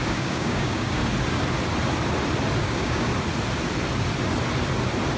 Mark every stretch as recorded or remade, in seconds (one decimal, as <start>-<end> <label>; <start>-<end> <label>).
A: 0.0-1.0 remade; 1.0-2.6 recorded; 2.6-3.1 remade; 3.1-5.2 recorded